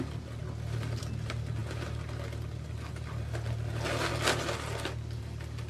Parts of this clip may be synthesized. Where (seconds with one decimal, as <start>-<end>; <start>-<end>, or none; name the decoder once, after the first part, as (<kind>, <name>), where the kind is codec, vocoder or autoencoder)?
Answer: none